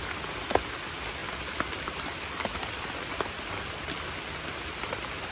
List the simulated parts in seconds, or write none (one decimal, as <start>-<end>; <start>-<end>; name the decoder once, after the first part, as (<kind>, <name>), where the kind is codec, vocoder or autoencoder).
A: 1.2-4.4 (vocoder, BigVGAN v2)